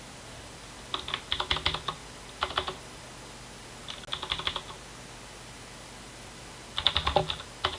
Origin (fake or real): real